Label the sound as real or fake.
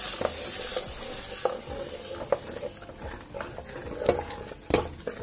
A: real